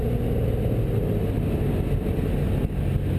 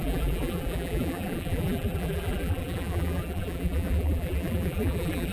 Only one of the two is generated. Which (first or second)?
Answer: second